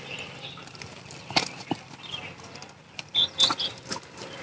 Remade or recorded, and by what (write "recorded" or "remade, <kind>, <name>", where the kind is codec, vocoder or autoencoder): recorded